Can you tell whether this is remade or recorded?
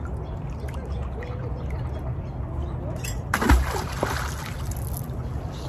recorded